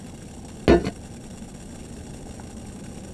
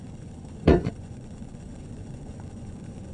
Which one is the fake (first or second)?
second